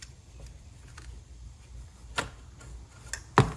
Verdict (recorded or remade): recorded